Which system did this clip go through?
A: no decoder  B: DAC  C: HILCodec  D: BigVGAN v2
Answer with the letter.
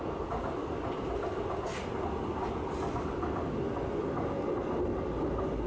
A